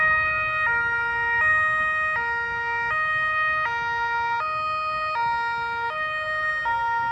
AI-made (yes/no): no